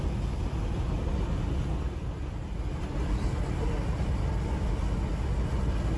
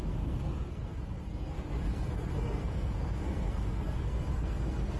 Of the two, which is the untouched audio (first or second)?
first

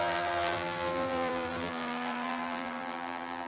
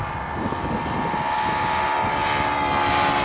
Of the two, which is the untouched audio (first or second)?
second